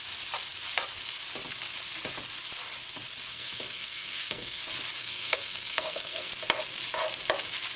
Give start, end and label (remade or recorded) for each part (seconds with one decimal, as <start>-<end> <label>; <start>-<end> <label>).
0.0-3.3 recorded; 3.3-4.6 remade; 4.6-5.0 recorded; 5.0-6.3 remade; 6.3-7.8 recorded